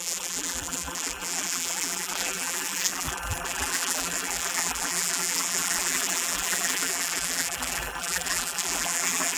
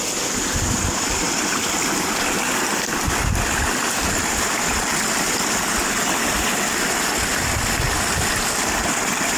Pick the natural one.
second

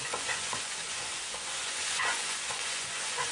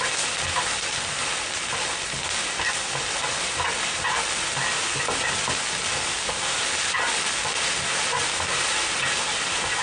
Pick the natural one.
second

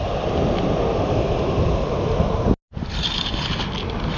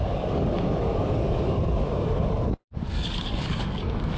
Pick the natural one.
first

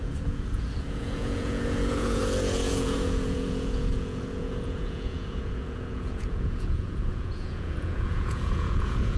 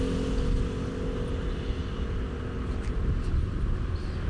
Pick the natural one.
second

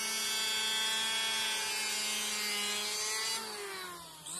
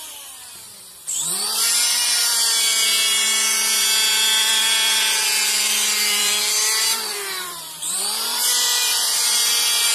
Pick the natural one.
first